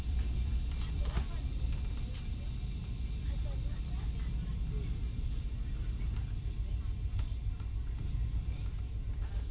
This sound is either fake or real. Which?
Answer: real